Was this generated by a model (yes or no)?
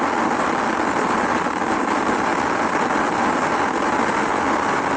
no